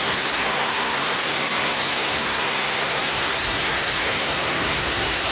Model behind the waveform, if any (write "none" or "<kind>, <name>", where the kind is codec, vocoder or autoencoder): codec, SNAC